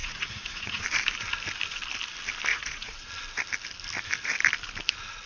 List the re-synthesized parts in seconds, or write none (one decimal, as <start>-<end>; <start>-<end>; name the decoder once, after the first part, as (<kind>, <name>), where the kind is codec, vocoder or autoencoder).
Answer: 0.0-0.8 (vocoder, Vocos); 2.5-3.1